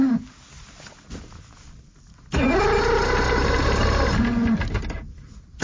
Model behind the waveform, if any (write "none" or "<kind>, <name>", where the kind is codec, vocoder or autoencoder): none